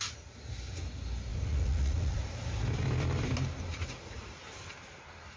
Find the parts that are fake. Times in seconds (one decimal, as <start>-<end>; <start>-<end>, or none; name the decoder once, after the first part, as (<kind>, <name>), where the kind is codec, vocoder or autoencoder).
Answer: 1.3-2.3 (vocoder, Vocos); 3.7-4.4